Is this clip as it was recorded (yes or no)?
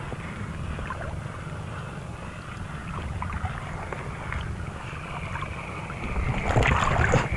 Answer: yes